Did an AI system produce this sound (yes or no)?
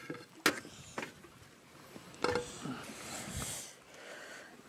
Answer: no